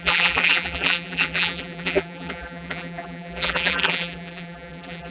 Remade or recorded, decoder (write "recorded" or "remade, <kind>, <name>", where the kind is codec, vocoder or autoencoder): remade, vocoder, BigVGAN v2